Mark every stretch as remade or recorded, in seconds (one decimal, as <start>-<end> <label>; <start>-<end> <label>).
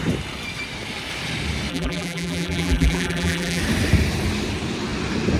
0.0-1.7 recorded; 1.7-3.6 remade; 3.6-5.4 recorded